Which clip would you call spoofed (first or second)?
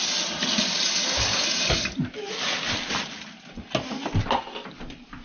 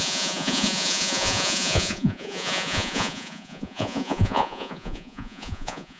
second